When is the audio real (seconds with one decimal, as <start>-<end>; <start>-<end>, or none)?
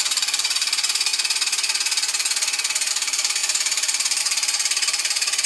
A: 1.1-2.9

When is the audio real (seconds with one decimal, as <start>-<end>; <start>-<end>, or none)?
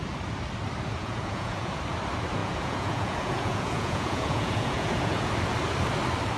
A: 0.0-1.0; 1.8-2.4; 5.3-6.4